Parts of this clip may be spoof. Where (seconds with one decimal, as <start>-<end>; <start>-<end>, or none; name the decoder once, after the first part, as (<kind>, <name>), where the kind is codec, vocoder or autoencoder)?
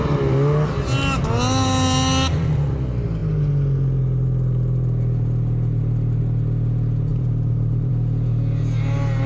7.1-7.9 (vocoder, BigVGAN v2)